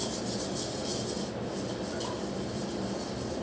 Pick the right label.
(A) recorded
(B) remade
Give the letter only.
B